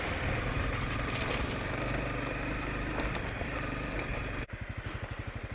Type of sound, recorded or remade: recorded